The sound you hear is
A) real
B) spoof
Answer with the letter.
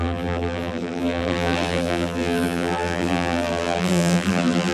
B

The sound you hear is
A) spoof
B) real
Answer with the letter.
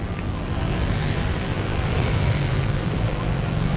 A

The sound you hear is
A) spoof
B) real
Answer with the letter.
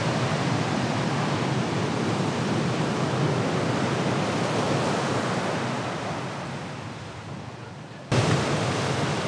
B